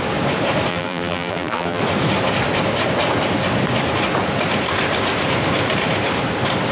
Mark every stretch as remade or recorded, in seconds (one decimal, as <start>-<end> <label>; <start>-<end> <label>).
0.0-0.7 recorded; 0.7-1.8 remade; 1.8-6.7 recorded